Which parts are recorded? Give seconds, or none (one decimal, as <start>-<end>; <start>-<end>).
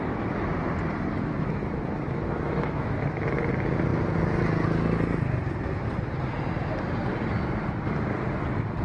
0.0-1.6; 3.5-8.8